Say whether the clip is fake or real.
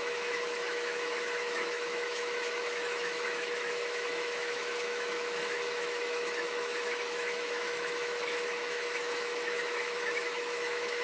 fake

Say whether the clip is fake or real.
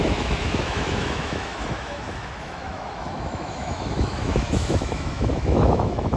fake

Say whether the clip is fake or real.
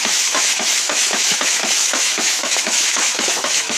fake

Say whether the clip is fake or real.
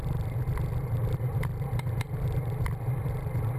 real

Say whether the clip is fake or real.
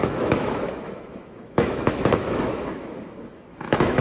fake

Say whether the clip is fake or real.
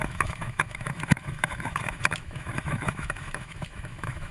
fake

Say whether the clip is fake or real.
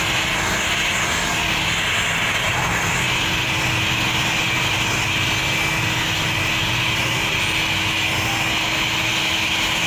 real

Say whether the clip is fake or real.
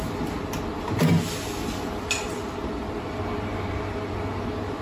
real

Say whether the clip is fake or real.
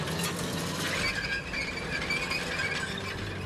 real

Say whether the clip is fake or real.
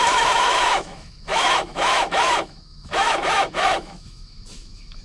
fake